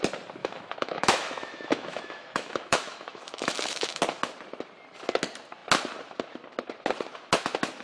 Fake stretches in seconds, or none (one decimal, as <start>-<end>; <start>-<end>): 0.4-4.0